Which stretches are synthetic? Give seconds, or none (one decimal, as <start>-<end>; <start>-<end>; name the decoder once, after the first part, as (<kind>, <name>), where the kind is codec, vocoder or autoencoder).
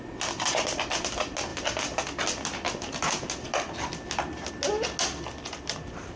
none